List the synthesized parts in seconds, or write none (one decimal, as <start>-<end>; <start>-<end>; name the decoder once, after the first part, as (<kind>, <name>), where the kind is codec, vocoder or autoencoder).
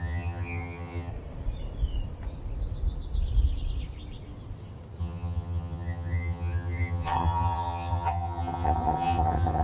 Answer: 0.0-1.1 (vocoder, HiFi-GAN); 5.0-9.6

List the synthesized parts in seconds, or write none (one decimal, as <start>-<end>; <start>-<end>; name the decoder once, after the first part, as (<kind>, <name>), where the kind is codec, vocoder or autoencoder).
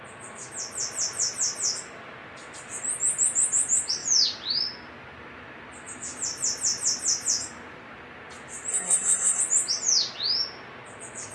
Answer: 8.7-9.4 (codec, SNAC)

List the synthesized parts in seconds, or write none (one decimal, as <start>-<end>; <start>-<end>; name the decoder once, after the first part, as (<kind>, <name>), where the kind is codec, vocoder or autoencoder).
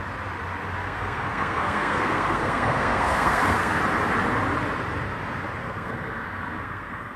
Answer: 0.8-3.8 (codec, SNAC); 5.6-7.2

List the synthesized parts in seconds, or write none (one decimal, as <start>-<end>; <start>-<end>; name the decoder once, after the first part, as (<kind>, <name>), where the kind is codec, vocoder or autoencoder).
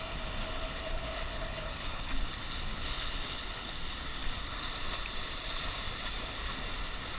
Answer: 0.4-2.0 (codec, HILCodec); 2.7-3.7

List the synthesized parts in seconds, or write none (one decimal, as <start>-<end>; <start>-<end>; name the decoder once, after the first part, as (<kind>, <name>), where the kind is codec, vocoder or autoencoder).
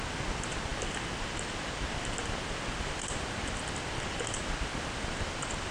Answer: none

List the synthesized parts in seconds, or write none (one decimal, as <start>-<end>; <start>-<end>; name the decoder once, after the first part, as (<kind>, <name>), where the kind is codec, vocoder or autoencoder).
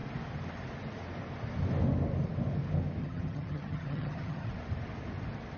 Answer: 3.0-4.5 (vocoder, HiFi-GAN)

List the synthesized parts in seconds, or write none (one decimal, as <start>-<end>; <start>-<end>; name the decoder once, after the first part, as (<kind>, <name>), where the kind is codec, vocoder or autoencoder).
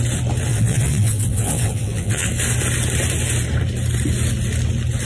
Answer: 0.5-2.3 (vocoder, WaveNeXt)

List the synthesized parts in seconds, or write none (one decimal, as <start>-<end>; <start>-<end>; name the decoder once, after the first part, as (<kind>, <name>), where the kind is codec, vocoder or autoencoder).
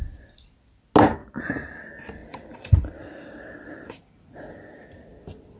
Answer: 1.2-1.8 (vocoder, BigVGAN v2); 2.2-4.2